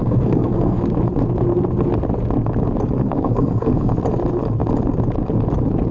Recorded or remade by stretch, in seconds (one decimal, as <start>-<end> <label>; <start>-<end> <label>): 0.0-0.8 remade; 0.8-3.0 recorded; 3.0-3.9 remade; 3.9-5.9 recorded